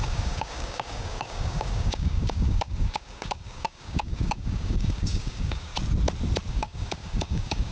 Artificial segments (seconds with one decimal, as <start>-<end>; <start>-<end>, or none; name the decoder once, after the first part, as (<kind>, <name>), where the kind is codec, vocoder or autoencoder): 0.0-5.7 (codec, DAC); 6.5-7.7